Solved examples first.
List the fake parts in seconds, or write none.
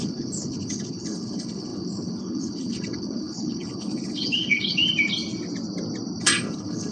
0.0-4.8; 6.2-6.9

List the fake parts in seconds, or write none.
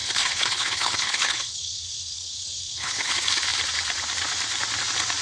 0.0-3.1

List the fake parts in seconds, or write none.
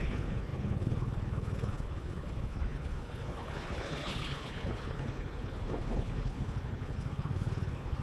0.0-8.0